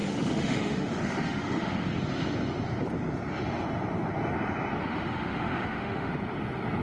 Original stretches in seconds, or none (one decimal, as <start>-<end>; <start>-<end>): 1.9-4.8; 6.1-6.8